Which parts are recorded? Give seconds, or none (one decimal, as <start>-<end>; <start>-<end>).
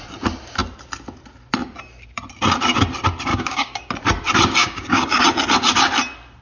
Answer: 0.0-3.3; 3.9-4.6; 5.2-6.4